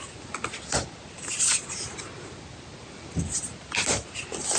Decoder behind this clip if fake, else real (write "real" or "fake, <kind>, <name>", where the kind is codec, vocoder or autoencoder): real